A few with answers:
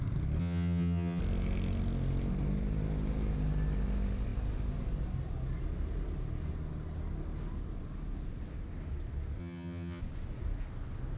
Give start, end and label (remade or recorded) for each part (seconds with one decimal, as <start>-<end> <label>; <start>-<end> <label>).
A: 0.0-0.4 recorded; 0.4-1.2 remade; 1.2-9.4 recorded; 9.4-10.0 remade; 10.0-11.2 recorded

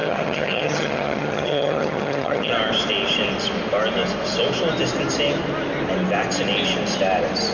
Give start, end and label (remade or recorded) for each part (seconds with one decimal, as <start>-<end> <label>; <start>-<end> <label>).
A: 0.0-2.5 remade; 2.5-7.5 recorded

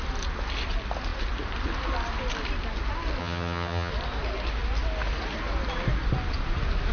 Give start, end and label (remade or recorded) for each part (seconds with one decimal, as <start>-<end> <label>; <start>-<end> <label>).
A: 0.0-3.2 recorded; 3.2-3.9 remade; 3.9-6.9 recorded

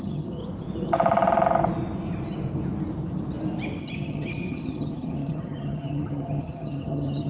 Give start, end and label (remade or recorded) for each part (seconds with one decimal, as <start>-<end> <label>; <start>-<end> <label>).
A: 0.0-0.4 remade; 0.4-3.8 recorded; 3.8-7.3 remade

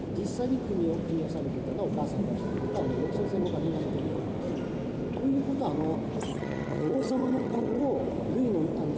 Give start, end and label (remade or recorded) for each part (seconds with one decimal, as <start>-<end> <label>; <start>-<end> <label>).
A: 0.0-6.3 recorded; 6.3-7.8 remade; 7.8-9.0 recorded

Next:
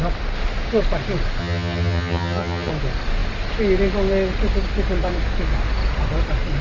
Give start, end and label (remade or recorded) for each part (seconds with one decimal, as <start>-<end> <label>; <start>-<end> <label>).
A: 0.0-1.4 recorded; 1.4-2.7 remade; 2.7-6.6 recorded